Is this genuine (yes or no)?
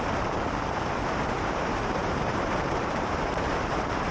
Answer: no